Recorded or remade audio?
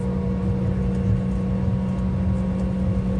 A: recorded